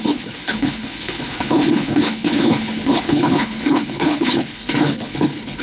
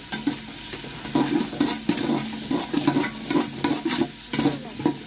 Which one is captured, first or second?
second